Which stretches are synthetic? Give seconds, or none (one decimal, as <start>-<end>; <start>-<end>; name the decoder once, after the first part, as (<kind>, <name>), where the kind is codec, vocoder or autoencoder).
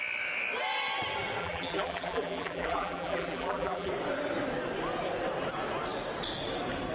1.4-3.9 (vocoder, BigVGAN v2)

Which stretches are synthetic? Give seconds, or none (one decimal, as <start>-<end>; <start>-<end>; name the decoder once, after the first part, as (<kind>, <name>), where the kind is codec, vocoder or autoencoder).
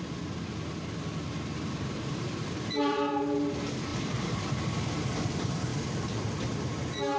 1.5-3.2 (vocoder, BigVGAN v2); 3.9-4.6; 5.7-6.7